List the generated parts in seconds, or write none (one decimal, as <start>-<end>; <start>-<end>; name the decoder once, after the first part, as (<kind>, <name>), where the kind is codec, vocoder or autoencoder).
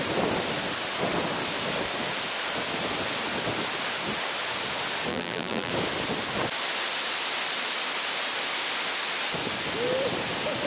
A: 5.1-5.7 (vocoder, BigVGAN v2)